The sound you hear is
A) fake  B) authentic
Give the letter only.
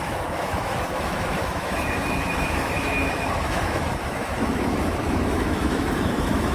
A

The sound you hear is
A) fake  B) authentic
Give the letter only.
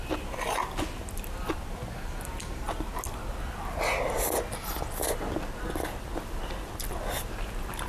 B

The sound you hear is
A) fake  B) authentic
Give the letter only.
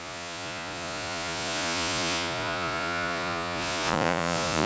A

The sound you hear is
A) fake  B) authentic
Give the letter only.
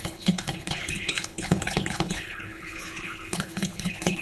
A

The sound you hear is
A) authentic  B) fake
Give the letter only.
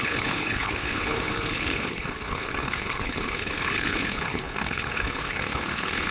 B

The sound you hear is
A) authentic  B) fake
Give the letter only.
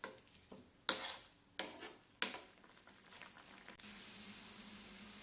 A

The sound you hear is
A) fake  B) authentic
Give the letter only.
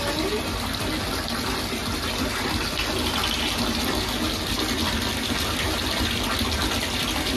B